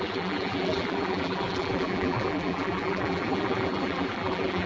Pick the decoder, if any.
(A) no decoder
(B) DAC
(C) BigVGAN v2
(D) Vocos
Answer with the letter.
C